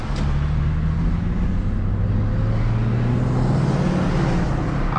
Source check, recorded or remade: recorded